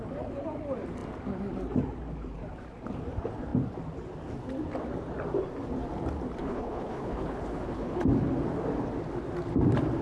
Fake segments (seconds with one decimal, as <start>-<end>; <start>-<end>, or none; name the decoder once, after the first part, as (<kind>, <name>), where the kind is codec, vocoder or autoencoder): 6.4-8.0 (codec, HILCodec)